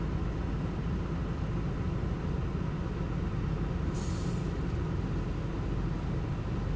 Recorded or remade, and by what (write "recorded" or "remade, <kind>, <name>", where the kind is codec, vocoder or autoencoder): recorded